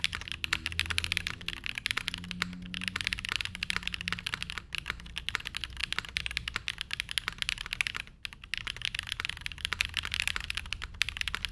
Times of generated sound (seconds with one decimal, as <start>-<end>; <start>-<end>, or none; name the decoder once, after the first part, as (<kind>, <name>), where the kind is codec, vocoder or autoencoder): none